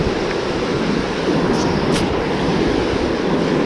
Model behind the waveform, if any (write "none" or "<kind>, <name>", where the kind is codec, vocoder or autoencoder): none